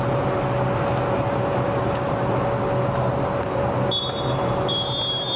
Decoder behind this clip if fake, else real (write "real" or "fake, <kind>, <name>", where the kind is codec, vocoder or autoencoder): real